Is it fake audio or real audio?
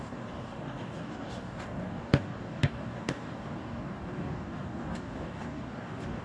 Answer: fake